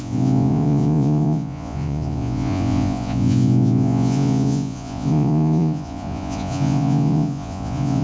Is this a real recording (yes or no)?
no